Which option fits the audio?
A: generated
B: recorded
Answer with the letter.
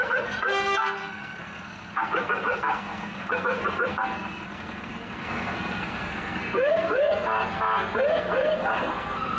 A